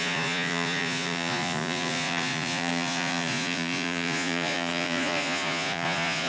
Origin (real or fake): fake